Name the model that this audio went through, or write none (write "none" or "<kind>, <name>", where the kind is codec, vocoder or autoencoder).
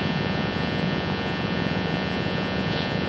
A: vocoder, Vocos